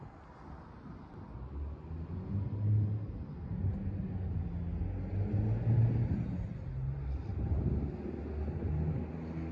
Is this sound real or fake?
real